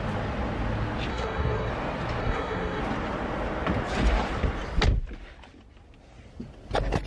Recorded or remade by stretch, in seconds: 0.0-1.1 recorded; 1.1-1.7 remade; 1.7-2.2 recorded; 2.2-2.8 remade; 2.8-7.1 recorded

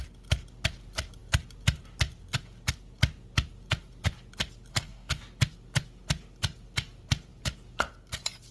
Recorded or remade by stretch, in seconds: 0.0-4.7 recorded; 4.7-5.2 remade; 5.2-8.5 recorded

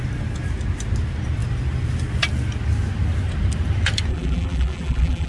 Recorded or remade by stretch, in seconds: 0.0-4.1 recorded; 4.1-5.3 remade

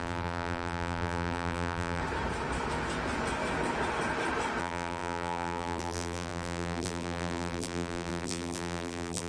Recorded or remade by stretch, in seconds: 0.0-2.0 remade; 2.0-4.6 recorded; 4.6-9.3 remade